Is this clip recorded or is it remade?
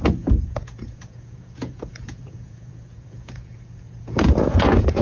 remade